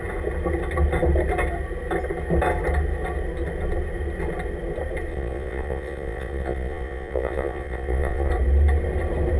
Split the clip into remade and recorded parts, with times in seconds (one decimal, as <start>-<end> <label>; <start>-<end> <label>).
0.0-5.1 recorded; 5.1-8.3 remade; 8.3-9.4 recorded